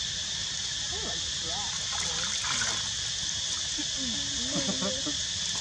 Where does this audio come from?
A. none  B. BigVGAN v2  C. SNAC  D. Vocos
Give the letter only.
A